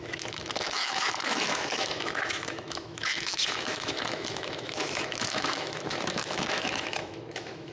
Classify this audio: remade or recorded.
remade